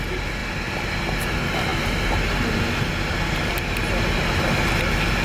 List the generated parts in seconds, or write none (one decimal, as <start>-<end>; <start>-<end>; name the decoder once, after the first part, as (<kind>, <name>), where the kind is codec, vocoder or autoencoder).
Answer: none